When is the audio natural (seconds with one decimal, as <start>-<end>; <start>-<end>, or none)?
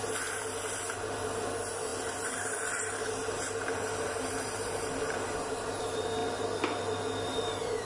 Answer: 6.2-7.8